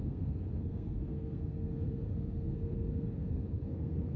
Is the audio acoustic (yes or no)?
no